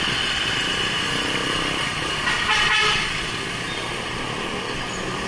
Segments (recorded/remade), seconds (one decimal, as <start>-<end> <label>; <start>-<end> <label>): 0.0-5.3 recorded